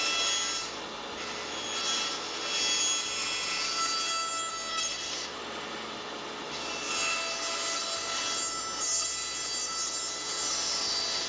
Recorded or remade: recorded